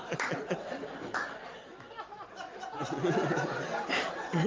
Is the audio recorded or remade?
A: recorded